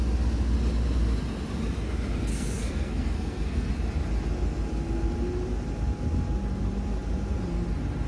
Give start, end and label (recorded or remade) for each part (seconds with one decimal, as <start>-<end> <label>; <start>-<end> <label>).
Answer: 0.0-2.3 recorded; 2.3-3.7 remade; 3.7-8.1 recorded